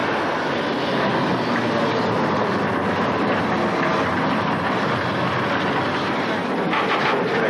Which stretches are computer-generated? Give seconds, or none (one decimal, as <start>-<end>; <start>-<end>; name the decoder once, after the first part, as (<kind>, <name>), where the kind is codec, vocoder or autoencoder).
none